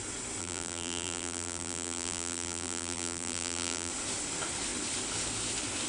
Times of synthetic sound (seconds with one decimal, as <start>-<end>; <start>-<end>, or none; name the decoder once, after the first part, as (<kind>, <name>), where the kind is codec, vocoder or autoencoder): 0.4-3.9 (vocoder, BigVGAN v2)